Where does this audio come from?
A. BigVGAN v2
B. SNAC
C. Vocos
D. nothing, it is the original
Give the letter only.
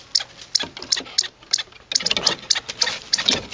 D